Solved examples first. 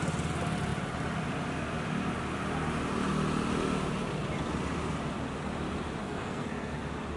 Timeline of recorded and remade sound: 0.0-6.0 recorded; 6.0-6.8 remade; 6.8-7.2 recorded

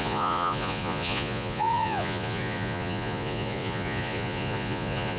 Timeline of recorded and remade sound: 0.0-5.2 remade